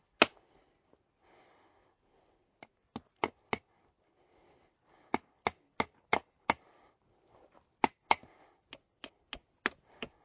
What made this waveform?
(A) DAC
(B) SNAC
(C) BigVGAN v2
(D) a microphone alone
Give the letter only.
D